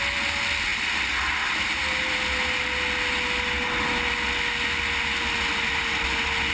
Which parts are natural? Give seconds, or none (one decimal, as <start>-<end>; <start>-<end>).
0.0-6.5